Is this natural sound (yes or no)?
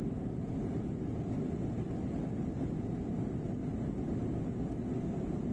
yes